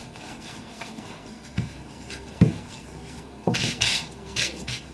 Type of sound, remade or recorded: remade